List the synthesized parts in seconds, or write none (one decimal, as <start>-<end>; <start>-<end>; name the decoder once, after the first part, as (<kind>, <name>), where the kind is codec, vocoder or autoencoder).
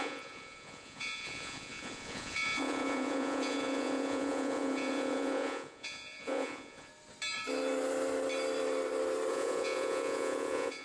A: 0.0-6.9 (vocoder, Vocos); 9.3-10.8